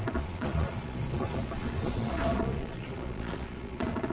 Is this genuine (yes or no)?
no